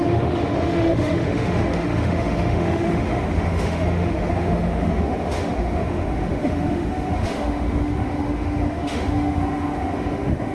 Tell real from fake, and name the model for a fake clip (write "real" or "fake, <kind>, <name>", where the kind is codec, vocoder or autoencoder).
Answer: fake, autoencoder, DAC-VAE